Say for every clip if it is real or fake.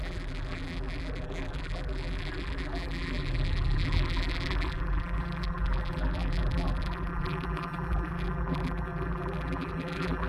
fake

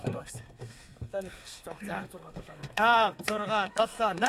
fake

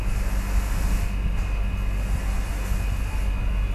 real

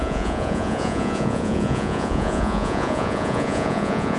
fake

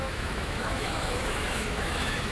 fake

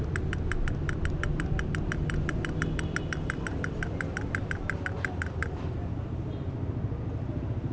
real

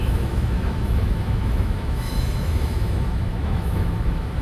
fake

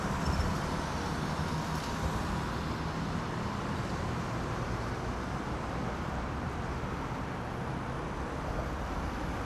real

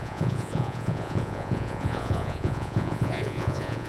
fake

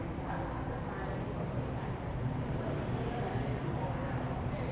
fake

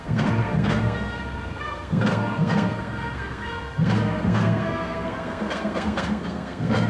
fake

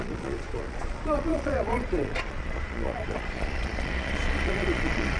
fake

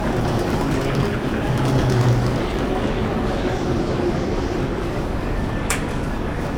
fake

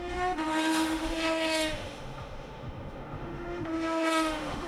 fake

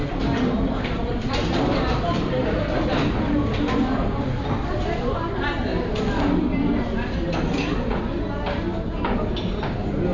real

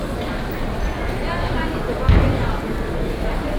real